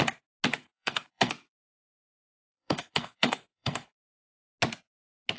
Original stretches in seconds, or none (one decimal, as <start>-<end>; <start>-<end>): 0.0-0.6; 1.3-2.3; 4.4-5.4